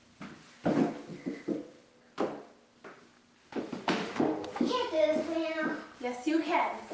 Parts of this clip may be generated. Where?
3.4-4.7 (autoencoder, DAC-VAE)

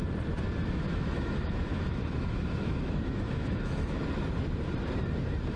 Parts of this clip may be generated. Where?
0.6-4.0 (autoencoder, DAC-VAE)

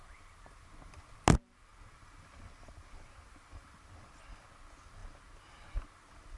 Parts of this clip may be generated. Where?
none

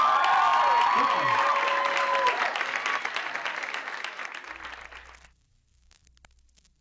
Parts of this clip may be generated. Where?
none

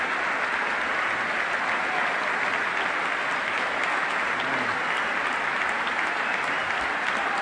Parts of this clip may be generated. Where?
3.4-4.2 (autoencoder, DAC-VAE)

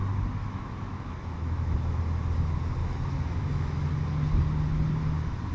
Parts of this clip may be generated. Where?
0.4-2.0 (autoencoder, DAC-VAE); 2.8-3.9

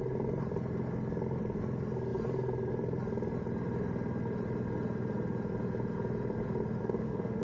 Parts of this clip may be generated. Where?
6.8-7.4 (autoencoder, DAC-VAE)